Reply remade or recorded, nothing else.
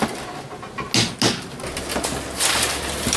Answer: recorded